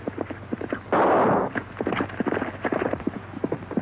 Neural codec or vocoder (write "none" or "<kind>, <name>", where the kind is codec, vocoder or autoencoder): none